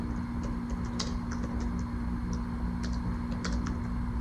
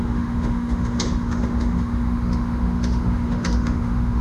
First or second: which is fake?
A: second